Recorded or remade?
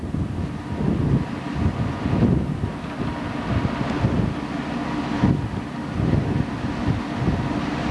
recorded